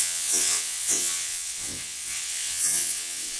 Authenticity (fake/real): fake